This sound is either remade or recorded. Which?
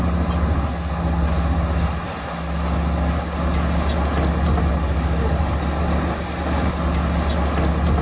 recorded